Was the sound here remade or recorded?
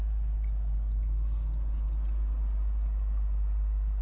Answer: recorded